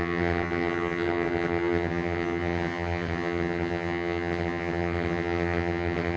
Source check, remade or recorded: remade